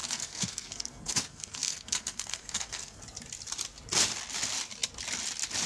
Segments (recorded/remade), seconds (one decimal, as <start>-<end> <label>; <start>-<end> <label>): 0.0-3.0 remade; 3.0-5.7 recorded